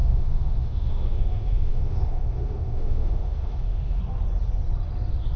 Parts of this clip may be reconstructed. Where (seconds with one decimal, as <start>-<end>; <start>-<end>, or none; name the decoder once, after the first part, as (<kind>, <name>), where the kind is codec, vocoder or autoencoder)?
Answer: 0.0-4.0 (autoencoder, DAC-VAE)